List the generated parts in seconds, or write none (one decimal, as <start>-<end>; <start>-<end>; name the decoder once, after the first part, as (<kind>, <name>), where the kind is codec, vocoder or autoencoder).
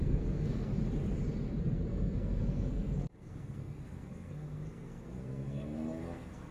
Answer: 0.0-0.7 (codec, SNAC); 1.6-6.5